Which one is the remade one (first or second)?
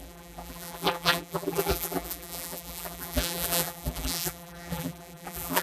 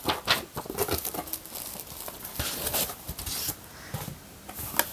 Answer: first